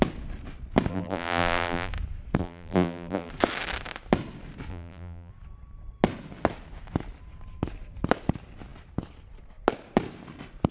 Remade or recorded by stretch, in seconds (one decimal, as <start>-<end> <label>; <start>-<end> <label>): 0.0-0.9 recorded; 0.9-1.9 remade; 1.9-2.4 recorded; 2.4-3.3 remade; 3.3-4.7 recorded; 4.7-5.3 remade; 5.3-10.7 recorded